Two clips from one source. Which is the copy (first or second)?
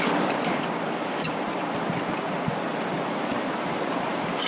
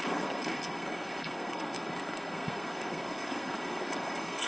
second